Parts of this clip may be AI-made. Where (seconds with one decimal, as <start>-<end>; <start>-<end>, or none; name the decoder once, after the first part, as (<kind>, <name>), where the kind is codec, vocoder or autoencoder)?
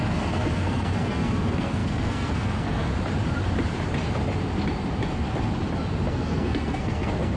0.0-2.9 (codec, SNAC); 6.1-7.4